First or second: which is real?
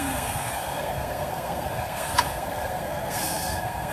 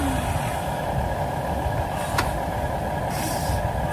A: second